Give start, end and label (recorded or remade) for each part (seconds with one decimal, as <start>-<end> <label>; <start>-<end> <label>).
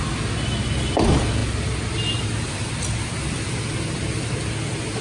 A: 0.0-5.0 recorded